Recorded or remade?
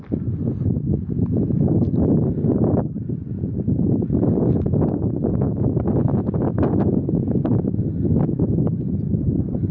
recorded